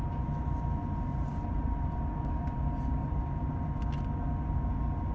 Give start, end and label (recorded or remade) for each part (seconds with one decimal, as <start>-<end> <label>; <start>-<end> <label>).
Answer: 0.0-1.1 recorded; 1.1-2.4 remade; 2.4-3.0 recorded; 3.0-3.8 remade; 3.8-5.1 recorded